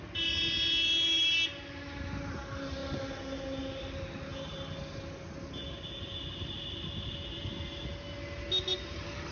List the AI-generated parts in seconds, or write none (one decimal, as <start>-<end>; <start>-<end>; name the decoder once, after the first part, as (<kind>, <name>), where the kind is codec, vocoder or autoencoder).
none